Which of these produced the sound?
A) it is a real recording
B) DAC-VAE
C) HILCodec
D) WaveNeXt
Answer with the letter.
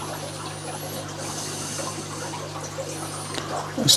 A